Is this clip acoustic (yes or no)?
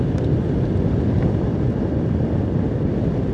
yes